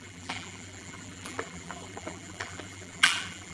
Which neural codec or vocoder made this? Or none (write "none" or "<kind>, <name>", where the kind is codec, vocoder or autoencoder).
vocoder, BigVGAN v2